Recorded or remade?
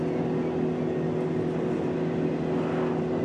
recorded